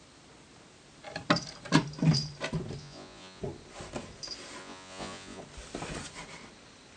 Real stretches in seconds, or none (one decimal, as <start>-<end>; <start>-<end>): 0.0-2.8; 3.4-4.6; 5.4-7.0